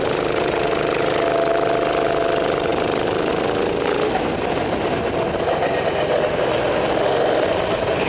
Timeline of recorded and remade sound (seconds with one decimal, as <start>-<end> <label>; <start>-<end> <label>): 0.0-8.1 recorded